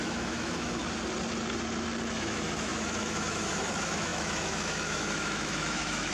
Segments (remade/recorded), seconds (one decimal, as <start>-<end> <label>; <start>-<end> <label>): 0.0-0.8 remade; 0.8-2.1 recorded; 2.1-6.1 remade